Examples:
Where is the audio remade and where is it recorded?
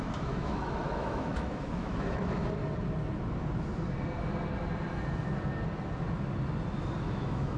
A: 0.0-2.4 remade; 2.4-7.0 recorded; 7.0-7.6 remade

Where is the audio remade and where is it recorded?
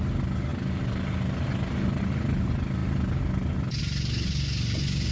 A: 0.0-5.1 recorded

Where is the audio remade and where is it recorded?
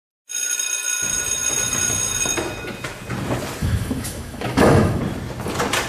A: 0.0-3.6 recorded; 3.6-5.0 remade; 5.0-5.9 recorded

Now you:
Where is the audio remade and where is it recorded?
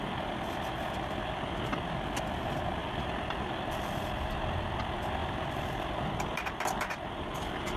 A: 0.0-2.8 recorded; 2.8-4.8 remade; 4.8-5.2 recorded; 5.2-7.3 remade; 7.3-7.8 recorded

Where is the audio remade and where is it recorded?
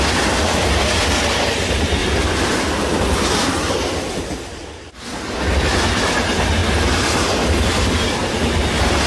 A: 0.0-9.1 recorded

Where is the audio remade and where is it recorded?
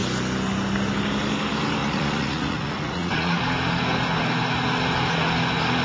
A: 0.0-1.8 recorded; 1.8-3.4 remade; 3.4-5.8 recorded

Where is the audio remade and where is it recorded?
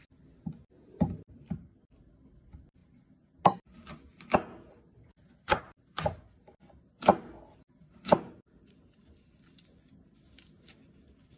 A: 0.0-11.4 recorded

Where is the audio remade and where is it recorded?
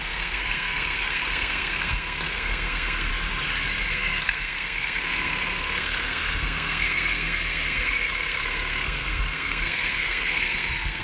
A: 0.0-3.1 remade; 3.1-3.9 recorded; 3.9-11.0 remade